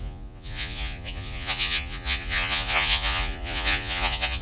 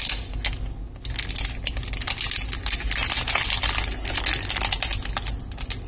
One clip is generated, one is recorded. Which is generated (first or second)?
first